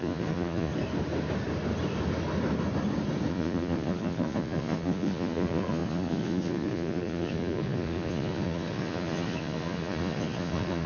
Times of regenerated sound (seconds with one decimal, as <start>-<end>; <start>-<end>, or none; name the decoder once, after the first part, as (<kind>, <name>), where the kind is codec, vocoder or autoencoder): 0.0-0.7 (vocoder, Vocos); 3.3-10.9